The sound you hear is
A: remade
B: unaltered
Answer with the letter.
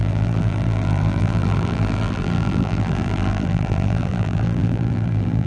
A